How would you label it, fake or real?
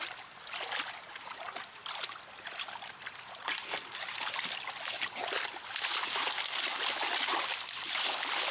real